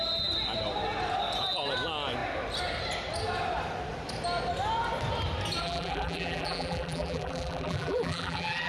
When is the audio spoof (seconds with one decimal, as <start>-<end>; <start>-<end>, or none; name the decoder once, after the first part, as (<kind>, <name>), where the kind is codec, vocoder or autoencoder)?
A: 5.6-8.7 (vocoder, BigVGAN v2)